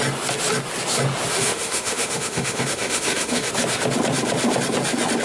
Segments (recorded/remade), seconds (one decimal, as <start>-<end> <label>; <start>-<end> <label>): 0.0-1.3 recorded; 1.3-3.5 remade; 3.5-5.2 recorded

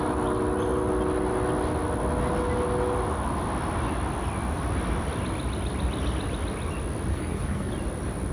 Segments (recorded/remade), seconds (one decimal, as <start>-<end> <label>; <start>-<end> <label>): 0.0-7.1 recorded; 7.1-7.7 remade; 7.7-8.3 recorded

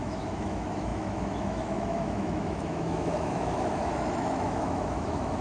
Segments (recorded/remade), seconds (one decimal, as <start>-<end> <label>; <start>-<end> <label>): 0.0-5.4 remade

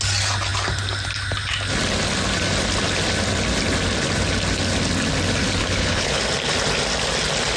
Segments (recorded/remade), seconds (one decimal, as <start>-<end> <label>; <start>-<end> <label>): 0.0-5.6 recorded; 5.6-6.2 remade; 6.2-7.6 recorded

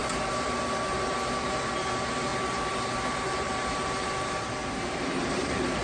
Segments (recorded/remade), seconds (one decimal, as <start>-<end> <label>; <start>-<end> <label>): 0.0-5.8 remade

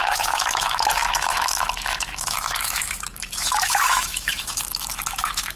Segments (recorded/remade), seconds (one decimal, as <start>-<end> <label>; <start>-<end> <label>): 0.0-5.6 remade

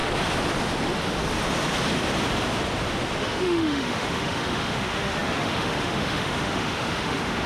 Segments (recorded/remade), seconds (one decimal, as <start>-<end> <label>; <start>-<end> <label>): 0.0-3.2 recorded; 3.2-7.5 remade

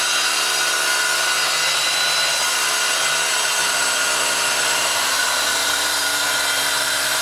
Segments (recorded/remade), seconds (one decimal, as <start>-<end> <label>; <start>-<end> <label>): 0.0-3.3 recorded; 3.3-7.2 remade